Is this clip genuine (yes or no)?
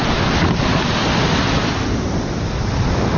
yes